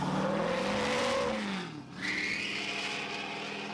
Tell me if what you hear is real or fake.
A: real